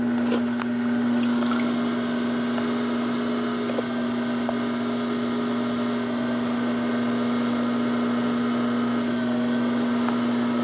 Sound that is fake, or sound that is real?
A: real